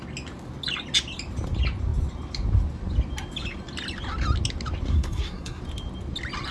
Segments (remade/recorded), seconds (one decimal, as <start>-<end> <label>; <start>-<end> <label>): 0.0-4.9 recorded; 4.9-5.6 remade; 5.6-6.5 recorded